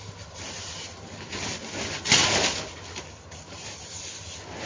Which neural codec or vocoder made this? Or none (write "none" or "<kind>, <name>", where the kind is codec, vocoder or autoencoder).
none